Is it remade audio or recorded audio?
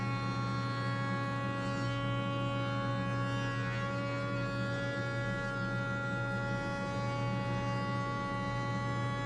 recorded